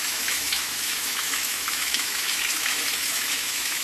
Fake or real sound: fake